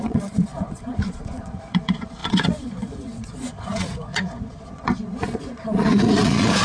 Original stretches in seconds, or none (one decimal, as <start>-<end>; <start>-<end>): none